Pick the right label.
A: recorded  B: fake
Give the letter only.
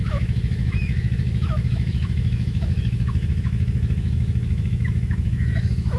B